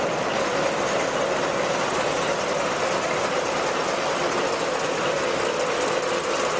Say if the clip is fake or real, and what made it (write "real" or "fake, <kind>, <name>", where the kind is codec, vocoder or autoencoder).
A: real